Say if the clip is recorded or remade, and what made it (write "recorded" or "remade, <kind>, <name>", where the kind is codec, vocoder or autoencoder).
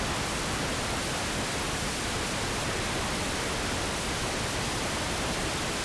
recorded